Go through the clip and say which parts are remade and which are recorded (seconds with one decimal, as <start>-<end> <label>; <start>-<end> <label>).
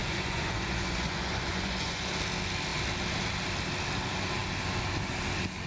0.0-2.1 remade; 2.1-5.7 recorded